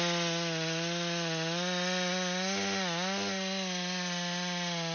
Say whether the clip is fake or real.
real